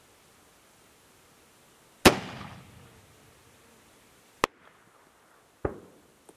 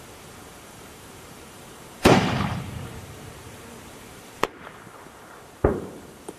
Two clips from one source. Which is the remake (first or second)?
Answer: second